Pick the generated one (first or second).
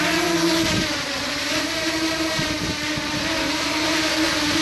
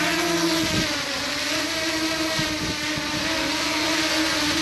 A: first